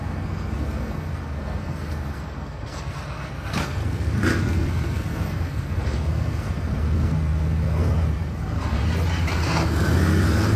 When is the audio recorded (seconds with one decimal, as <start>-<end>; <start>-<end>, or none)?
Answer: 8.8-9.3

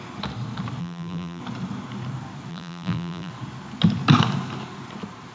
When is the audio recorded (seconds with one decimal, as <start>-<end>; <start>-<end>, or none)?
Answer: 0.0-0.8; 1.4-2.5; 3.3-5.3

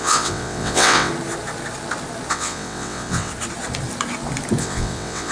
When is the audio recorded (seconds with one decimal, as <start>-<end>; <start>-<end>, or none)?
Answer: 1.1-2.3; 3.3-4.6

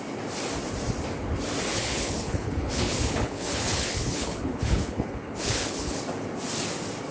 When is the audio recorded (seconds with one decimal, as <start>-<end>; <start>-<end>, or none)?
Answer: 0.0-1.7; 6.0-7.1

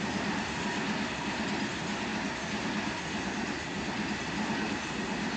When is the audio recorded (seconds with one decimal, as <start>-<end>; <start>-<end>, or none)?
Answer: 0.0-5.4

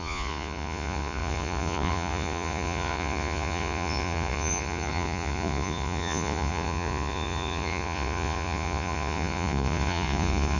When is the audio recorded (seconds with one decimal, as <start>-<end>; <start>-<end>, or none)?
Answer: none

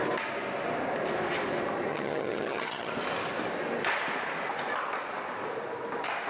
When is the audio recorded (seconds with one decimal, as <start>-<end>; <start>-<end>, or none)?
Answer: 0.0-1.9; 2.9-6.3

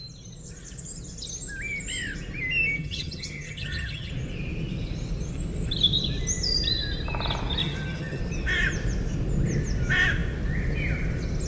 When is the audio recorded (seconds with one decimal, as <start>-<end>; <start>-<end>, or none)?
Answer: 0.0-2.8; 4.1-7.6; 8.2-11.5